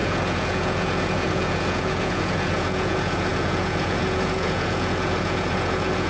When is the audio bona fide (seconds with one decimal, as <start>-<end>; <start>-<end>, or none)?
none